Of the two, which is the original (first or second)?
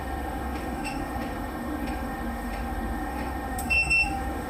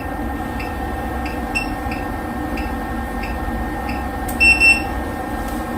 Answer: second